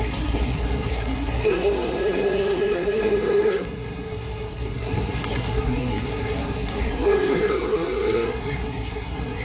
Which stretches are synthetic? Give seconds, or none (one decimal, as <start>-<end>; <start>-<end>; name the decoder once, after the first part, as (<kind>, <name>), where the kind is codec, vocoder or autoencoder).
0.0-9.4 (codec, SNAC)